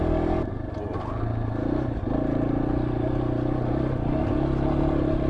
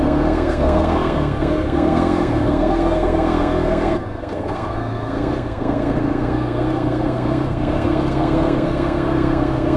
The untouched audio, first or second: first